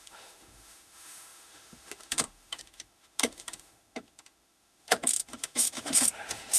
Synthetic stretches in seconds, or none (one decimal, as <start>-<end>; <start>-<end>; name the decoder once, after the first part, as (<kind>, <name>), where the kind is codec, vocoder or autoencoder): 0.0-6.6 (autoencoder, DAC-VAE)